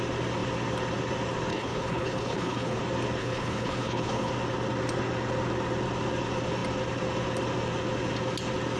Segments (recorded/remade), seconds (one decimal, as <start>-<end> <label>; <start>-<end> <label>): 0.0-1.5 recorded; 1.5-2.8 remade; 2.8-3.2 recorded; 3.2-4.3 remade; 4.3-8.8 recorded